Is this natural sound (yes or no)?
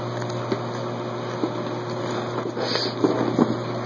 yes